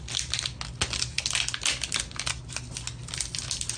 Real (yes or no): yes